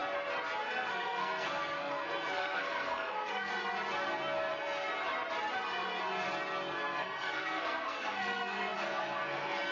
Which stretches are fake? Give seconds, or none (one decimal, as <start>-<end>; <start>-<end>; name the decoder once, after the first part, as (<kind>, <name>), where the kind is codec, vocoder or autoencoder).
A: 0.6-3.5 (codec, SNAC); 6.7-9.7